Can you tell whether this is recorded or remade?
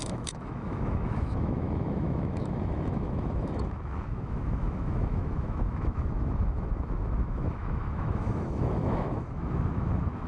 remade